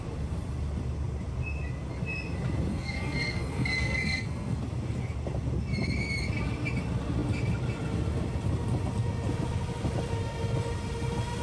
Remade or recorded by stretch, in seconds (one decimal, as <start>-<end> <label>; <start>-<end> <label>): 0.0-2.7 recorded; 2.7-4.6 remade; 4.6-11.4 recorded